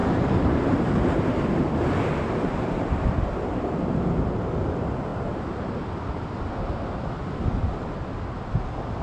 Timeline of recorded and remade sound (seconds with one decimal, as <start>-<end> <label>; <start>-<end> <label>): 0.0-3.2 remade; 3.2-9.0 recorded